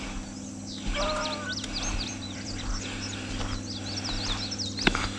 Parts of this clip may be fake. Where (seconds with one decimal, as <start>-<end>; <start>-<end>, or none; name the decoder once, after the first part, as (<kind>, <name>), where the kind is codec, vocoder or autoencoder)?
1.9-2.7 (vocoder, BigVGAN v2)